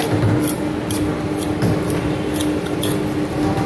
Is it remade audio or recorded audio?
recorded